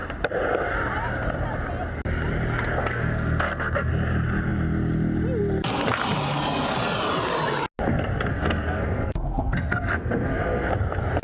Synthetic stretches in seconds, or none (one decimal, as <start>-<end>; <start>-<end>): 2.8-3.9; 8.3-10.7